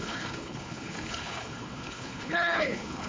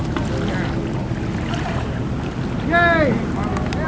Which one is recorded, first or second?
second